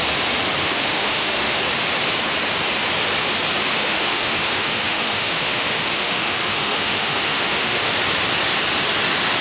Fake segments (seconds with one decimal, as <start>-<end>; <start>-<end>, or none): 0.6-1.6; 3.7-7.9